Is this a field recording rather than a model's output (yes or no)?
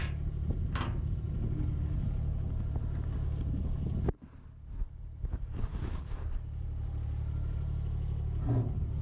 yes